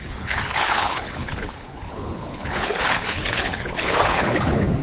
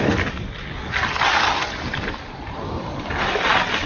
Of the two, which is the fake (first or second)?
first